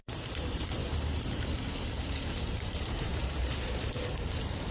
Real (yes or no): no